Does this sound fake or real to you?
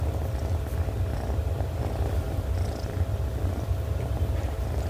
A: fake